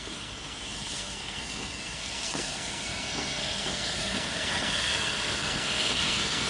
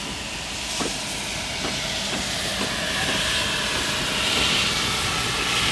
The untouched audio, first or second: second